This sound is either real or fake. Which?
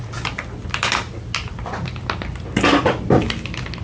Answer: real